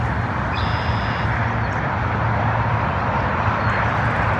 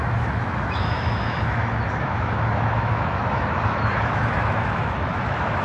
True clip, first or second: first